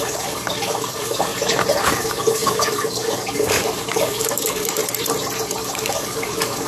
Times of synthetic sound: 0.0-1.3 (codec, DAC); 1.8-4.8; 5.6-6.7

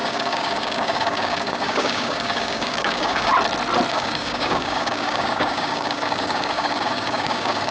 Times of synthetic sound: 0.0-3.3 (codec, DAC); 3.9-7.7

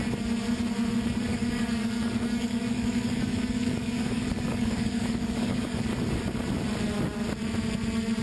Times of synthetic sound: 1.3-5.8 (codec, DAC)

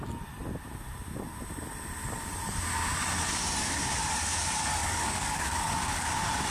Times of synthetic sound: 4.8-6.1 (codec, DAC)

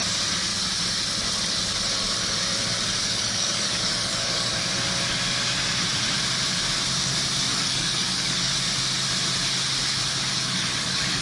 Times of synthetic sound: 3.0-4.5 (codec, DAC); 7.5-8.5; 10.3-11.2

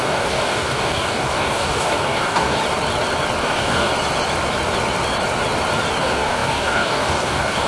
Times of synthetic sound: 0.0-2.6 (codec, DAC); 3.4-3.9; 6.0-7.7